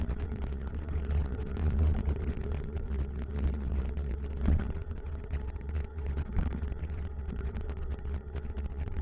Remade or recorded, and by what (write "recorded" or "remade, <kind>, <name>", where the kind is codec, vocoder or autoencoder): remade, vocoder, WaveNeXt